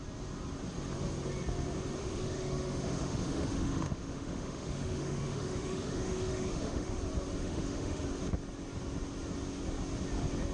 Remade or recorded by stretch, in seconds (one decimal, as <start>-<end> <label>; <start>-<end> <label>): 0.0-2.0 recorded; 2.0-7.0 remade; 7.0-7.4 recorded; 7.4-8.0 remade; 8.0-10.5 recorded